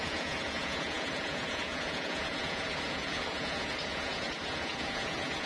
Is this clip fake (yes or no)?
yes